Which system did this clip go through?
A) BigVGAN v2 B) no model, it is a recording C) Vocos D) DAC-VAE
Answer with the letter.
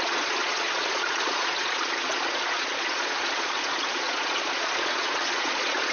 C